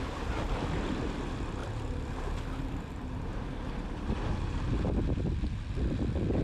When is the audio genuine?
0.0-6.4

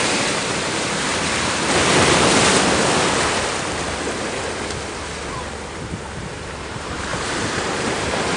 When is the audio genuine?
1.1-6.1

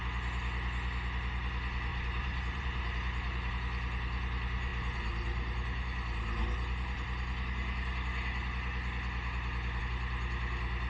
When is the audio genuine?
0.0-1.9; 3.5-10.9

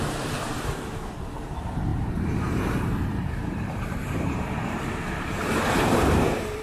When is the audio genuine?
none

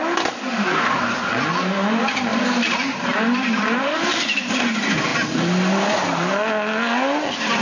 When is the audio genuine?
0.0-2.3; 4.6-7.6

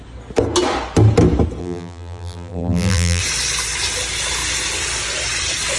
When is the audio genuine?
0.0-1.6; 3.2-5.8

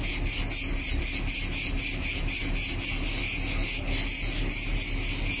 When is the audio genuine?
0.0-5.4